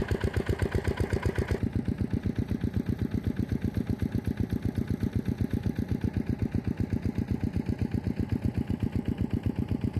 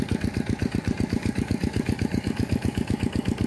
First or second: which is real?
first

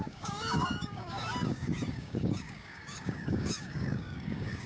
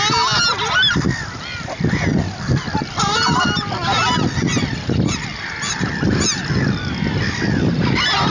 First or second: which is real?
second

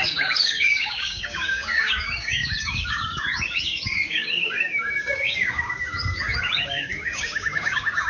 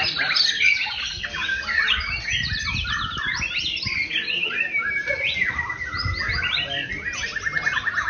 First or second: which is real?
second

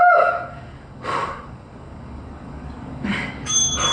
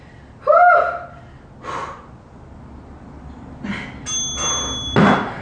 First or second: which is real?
second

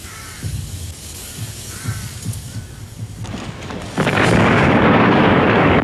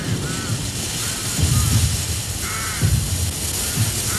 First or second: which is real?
second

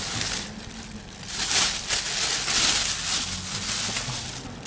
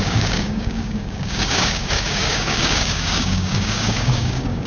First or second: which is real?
first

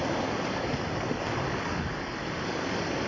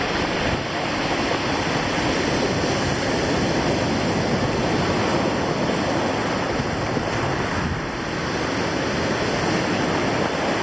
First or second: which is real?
second